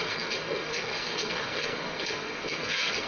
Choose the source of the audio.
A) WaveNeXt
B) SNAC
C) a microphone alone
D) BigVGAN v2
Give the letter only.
B